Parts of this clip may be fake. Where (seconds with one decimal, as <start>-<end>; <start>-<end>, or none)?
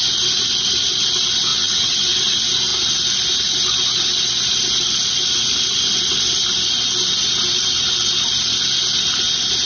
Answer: 1.5-2.2